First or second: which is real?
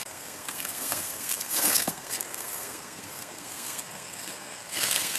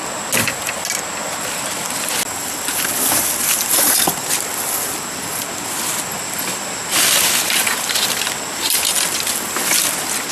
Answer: second